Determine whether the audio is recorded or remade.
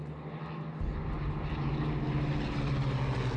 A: recorded